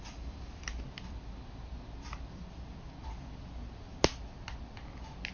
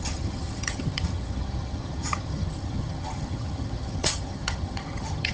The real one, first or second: first